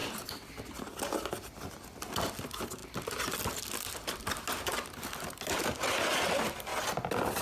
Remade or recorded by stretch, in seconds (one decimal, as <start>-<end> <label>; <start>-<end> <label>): 0.0-7.4 recorded